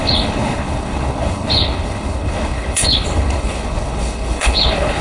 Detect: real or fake fake